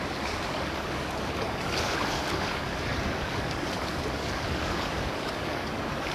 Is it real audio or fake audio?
fake